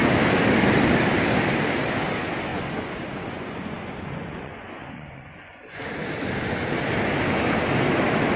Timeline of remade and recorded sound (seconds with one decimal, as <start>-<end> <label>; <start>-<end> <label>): 0.0-2.5 recorded; 2.5-5.8 remade; 5.8-8.4 recorded